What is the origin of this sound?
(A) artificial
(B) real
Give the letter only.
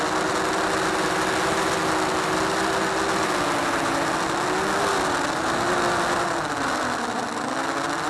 B